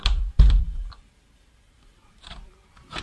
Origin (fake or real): fake